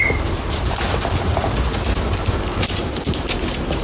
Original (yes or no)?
yes